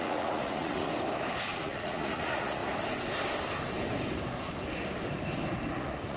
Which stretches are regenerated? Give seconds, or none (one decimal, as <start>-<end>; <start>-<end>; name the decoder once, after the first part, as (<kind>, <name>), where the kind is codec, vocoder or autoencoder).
0.0-0.9 (vocoder, Vocos); 1.4-2.6; 5.7-6.2